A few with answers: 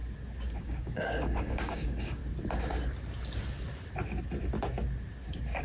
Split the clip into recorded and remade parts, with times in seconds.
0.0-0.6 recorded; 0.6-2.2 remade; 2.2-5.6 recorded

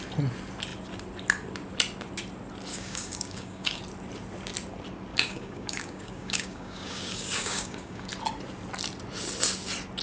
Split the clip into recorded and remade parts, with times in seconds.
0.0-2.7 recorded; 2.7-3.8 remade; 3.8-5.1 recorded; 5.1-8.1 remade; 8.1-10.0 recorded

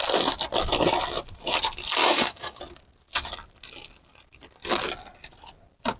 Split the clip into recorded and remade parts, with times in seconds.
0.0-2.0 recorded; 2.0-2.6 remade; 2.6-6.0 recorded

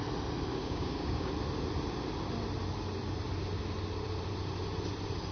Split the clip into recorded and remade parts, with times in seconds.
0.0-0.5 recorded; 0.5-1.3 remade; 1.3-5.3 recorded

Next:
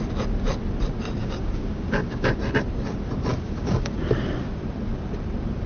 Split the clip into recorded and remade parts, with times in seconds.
0.0-1.2 recorded; 1.2-2.3 remade; 2.3-3.3 recorded; 3.3-4.0 remade; 4.0-5.7 recorded